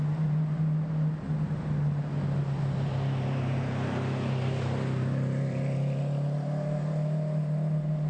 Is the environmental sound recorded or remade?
recorded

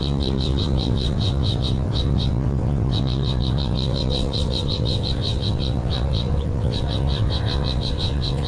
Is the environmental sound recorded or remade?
remade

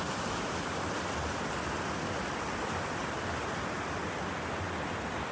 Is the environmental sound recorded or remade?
recorded